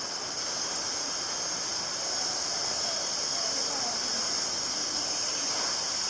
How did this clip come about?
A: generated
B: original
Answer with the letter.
B